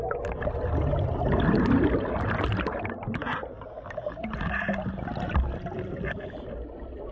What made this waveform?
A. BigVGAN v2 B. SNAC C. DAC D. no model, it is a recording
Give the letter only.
D